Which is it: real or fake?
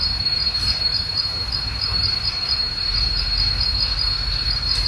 real